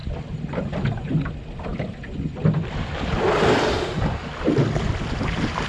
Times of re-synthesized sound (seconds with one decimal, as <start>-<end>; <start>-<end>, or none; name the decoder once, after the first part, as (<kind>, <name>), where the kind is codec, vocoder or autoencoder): none